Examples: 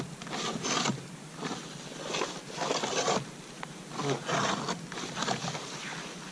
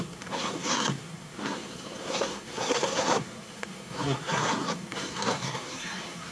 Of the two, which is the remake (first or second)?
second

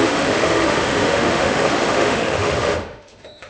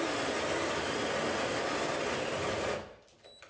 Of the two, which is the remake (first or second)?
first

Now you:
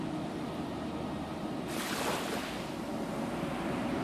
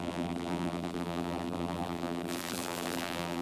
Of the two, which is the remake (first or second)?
second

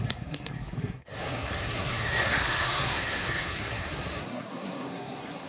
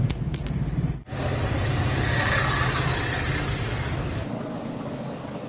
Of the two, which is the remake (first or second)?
first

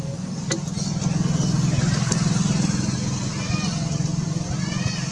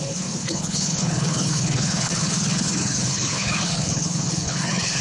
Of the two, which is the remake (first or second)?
second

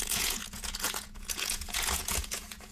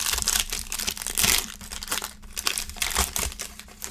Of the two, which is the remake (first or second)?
first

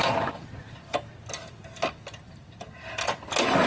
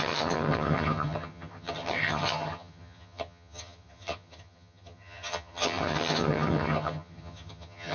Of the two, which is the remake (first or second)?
second